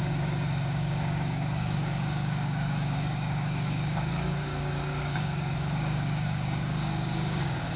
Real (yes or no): no